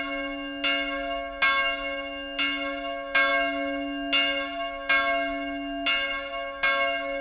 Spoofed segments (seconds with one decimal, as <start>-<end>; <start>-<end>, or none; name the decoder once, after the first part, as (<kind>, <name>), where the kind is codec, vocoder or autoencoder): none